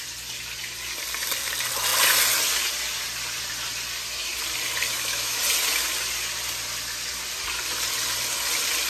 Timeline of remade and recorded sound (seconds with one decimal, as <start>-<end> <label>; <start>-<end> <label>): 0.0-4.9 recorded; 4.9-5.4 remade; 5.4-8.9 recorded